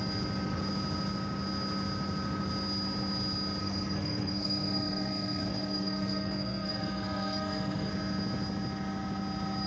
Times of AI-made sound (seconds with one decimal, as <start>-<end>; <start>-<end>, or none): 3.6-7.9